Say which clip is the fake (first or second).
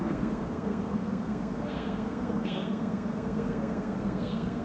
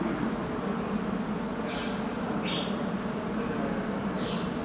first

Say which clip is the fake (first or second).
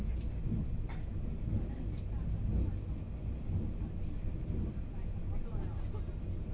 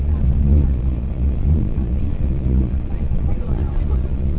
second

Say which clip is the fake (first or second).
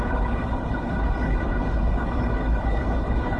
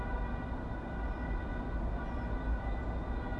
first